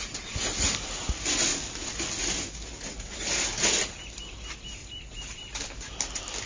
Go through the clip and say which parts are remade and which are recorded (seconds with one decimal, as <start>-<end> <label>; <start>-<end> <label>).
0.0-4.8 recorded; 4.8-5.3 remade; 5.3-6.5 recorded